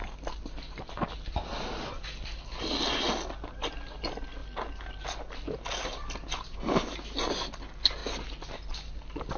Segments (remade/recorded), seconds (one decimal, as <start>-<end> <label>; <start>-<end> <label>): 0.0-9.4 recorded